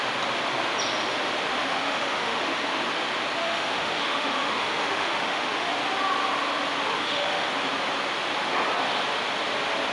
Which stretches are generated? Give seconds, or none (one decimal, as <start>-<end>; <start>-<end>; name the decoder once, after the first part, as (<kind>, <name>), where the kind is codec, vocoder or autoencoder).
1.6-2.8 (autoencoder, DAC-VAE); 3.4-5.7; 6.9-7.5